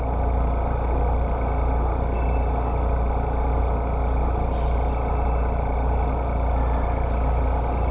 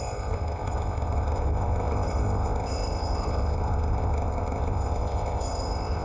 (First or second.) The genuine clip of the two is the first